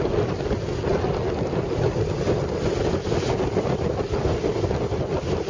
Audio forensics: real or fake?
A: real